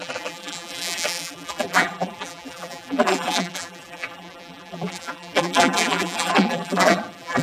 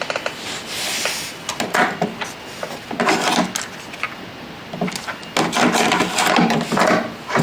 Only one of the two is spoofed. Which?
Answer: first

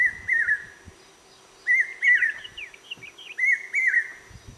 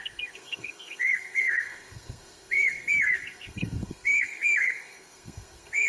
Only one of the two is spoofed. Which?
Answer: second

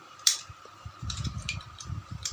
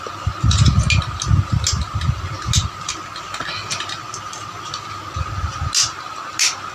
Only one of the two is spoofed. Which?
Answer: first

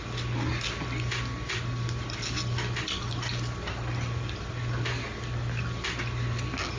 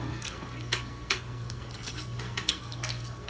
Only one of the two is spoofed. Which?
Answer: second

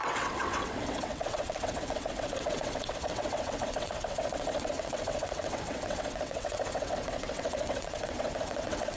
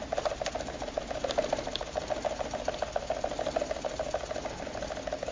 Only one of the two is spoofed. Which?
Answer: first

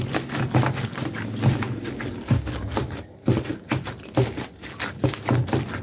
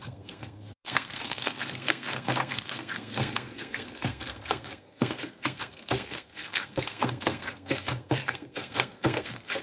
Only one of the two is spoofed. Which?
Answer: second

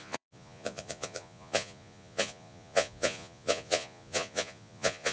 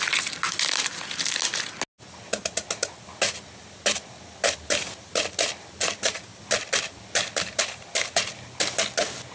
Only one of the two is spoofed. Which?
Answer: first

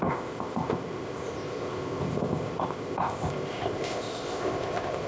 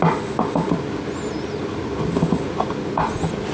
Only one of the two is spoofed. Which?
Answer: first